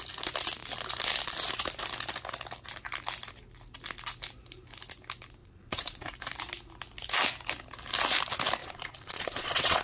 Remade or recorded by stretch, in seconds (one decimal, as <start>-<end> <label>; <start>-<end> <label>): 0.0-5.4 recorded; 5.4-6.0 remade; 6.0-8.6 recorded; 8.6-9.8 remade